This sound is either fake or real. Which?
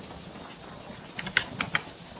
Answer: real